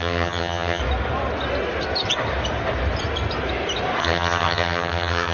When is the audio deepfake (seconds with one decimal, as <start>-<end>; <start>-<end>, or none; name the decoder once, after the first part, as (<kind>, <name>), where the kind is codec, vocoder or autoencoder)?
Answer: 0.0-0.8 (vocoder, HiFi-GAN); 4.0-5.3